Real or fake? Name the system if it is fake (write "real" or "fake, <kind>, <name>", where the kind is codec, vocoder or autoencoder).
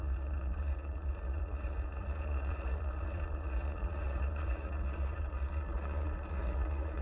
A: fake, vocoder, Vocos